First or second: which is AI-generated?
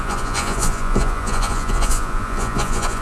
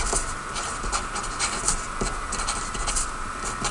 first